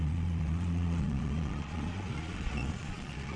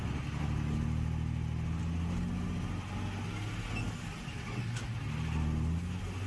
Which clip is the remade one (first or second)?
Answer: first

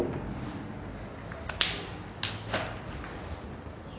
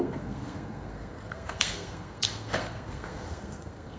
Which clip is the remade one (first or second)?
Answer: second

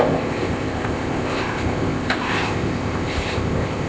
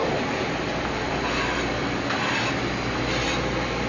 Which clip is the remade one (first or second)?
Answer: first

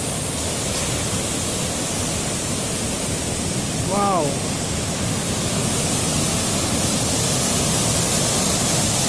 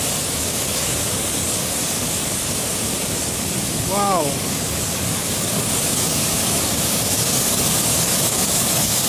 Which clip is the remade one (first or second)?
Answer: second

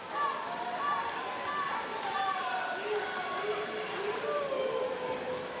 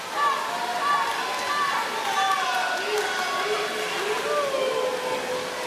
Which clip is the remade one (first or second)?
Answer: first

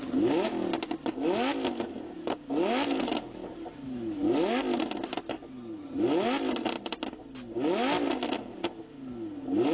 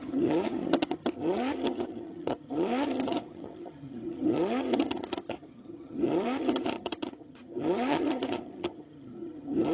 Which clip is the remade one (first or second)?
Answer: second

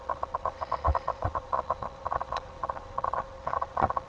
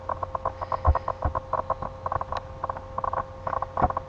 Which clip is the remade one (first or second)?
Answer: first